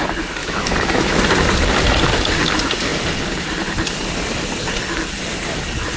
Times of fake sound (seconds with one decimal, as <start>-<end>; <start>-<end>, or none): 0.4-1.2